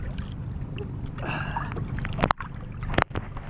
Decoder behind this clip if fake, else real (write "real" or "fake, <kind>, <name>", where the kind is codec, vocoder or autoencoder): real